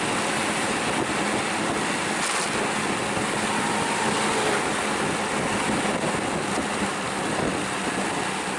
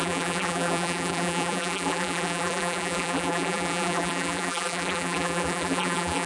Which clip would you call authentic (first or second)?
first